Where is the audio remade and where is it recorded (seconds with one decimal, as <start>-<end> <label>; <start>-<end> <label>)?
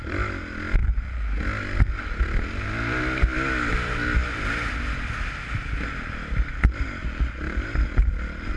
0.0-8.6 recorded